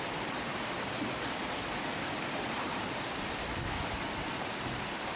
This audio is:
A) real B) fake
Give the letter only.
A